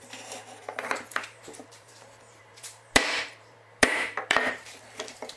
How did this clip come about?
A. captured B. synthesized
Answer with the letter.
B